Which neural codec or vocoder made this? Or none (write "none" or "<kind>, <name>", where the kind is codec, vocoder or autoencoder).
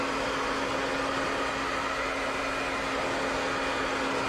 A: none